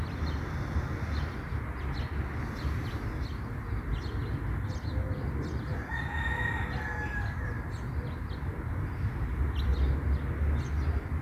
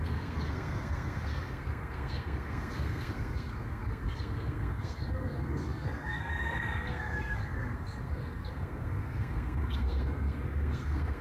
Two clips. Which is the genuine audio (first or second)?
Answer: first